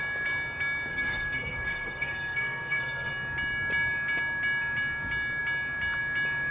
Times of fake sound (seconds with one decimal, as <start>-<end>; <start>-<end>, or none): 0.9-3.1